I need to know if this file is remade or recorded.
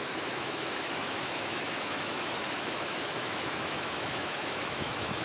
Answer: remade